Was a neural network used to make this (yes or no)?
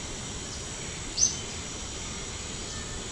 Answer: no